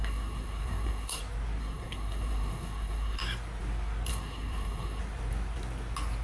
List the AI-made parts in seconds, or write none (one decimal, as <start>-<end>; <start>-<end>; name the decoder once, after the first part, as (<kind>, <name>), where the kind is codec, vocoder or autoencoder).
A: 0.0-1.2 (codec, SNAC); 1.6-3.2; 4.1-5.0